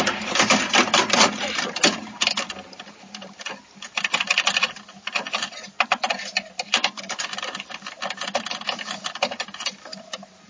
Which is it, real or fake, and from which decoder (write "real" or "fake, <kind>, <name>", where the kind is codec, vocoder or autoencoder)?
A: real